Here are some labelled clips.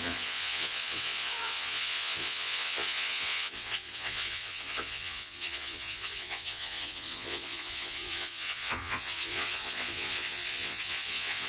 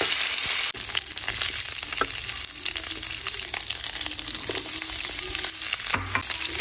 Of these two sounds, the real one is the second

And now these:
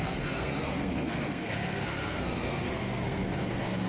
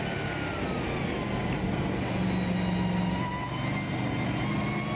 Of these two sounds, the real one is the second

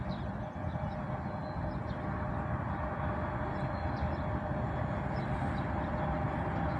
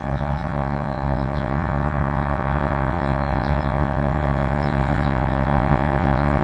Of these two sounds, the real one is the first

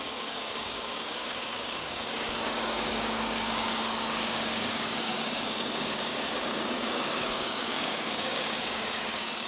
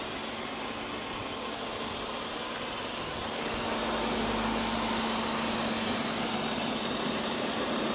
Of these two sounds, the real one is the second